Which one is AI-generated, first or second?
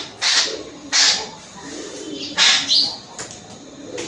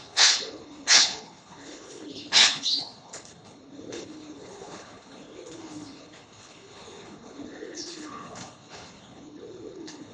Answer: second